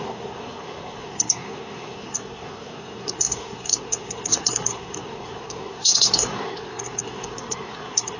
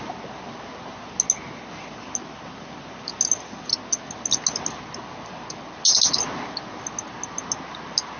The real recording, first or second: second